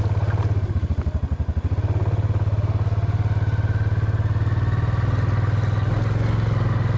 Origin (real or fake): real